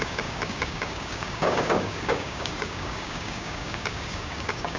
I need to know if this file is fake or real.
fake